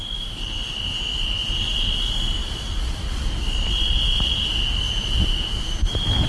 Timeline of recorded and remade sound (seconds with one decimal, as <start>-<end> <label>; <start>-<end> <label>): 0.0-6.3 recorded